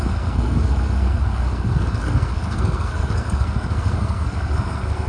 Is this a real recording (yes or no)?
no